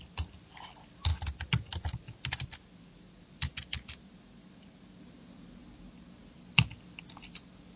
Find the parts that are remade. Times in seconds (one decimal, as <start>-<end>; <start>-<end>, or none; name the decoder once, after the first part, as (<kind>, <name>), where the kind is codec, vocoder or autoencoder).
6.2-7.0 (vocoder, BigVGAN v2)